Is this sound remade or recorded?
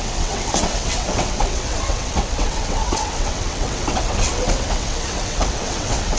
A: remade